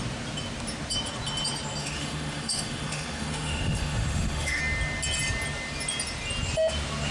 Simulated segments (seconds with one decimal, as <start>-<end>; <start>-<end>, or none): 1.8-4.6